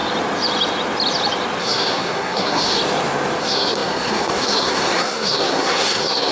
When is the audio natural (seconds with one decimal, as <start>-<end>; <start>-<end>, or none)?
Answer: 0.0-1.6; 2.8-3.4

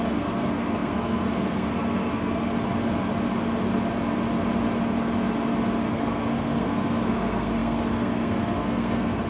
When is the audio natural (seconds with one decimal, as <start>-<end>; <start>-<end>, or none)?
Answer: 2.5-5.9

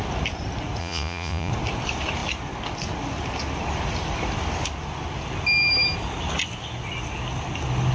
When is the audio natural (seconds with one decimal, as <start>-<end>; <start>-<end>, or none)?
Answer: 0.0-0.8; 1.5-7.9

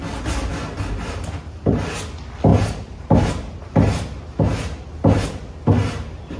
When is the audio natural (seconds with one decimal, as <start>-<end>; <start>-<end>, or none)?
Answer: 0.0-6.4

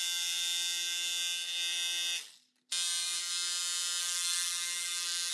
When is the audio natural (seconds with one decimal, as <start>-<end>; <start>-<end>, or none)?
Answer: 0.0-4.0

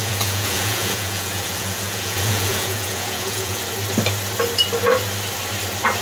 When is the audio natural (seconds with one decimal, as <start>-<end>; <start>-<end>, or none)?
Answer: 3.6-6.0

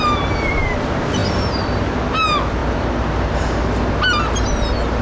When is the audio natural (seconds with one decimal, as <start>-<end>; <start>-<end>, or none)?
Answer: 0.0-5.0

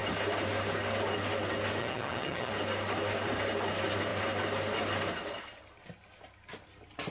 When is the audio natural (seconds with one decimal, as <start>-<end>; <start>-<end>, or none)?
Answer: 0.0-1.8; 2.5-7.1